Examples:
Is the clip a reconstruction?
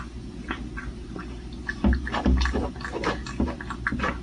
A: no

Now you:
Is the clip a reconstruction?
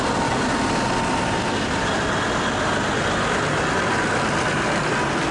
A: no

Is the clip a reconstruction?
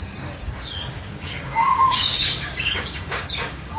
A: yes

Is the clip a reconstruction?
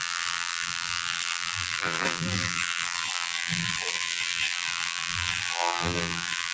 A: yes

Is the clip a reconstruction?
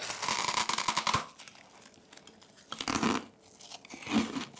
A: no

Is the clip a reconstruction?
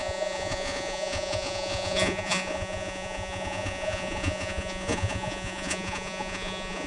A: yes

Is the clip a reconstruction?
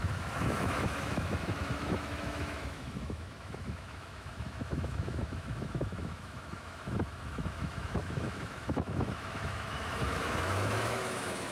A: yes